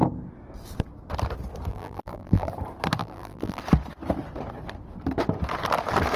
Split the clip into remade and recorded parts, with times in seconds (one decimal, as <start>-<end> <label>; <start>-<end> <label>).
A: 0.0-1.7 recorded; 1.7-2.5 remade; 2.5-3.0 recorded; 3.0-3.6 remade; 3.6-6.2 recorded